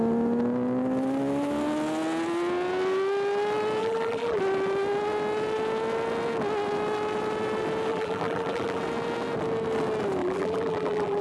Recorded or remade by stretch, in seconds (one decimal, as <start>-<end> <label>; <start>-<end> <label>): 0.0-3.8 recorded; 3.8-4.4 remade; 4.4-7.9 recorded; 7.9-8.8 remade; 8.8-10.2 recorded; 10.2-11.2 remade